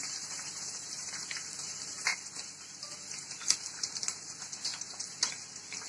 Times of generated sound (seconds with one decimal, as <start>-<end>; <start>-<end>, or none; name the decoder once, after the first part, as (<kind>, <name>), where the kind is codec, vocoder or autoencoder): 0.0-2.1 (vocoder, BigVGAN v2); 2.9-5.9